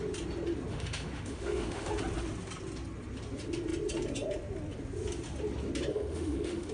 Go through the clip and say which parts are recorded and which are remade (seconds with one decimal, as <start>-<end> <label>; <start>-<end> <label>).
0.0-0.7 recorded; 0.7-1.9 remade; 1.9-5.9 recorded; 5.9-6.7 remade